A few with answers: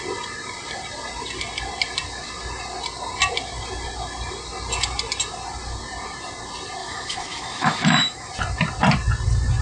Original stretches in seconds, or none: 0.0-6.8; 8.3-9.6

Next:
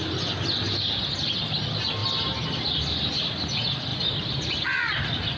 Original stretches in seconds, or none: 0.0-2.0; 3.4-3.9; 4.8-5.4

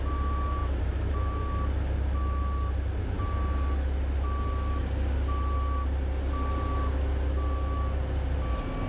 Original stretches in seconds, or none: 0.0-0.6; 1.4-8.9

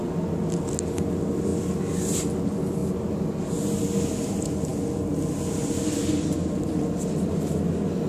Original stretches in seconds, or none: 0.0-8.1